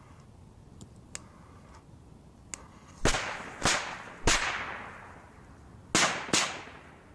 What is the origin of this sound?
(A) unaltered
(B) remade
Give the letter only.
A